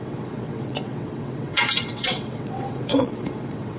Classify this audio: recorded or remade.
remade